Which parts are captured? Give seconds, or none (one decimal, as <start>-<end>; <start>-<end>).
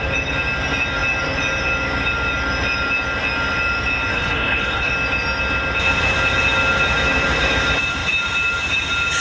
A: 0.0-4.1; 4.9-9.2